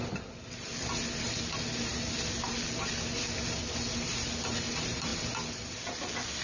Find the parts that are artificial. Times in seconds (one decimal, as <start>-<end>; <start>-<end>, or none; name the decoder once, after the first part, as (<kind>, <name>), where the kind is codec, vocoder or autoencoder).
0.0-0.7 (vocoder, BigVGAN v2); 4.5-5.1